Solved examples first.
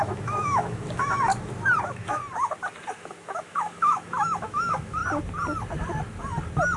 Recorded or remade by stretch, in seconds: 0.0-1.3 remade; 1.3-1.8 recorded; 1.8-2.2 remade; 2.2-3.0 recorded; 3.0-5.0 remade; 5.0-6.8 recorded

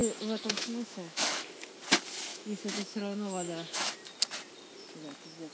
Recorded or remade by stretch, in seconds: 0.0-1.7 remade; 1.7-2.3 recorded; 2.3-3.9 remade; 3.9-5.5 recorded

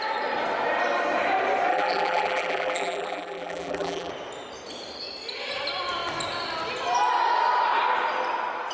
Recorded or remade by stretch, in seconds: 0.0-1.7 recorded; 1.7-4.1 remade; 4.1-8.7 recorded